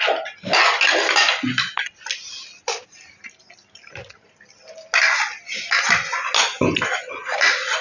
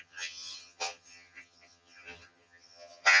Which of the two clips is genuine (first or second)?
first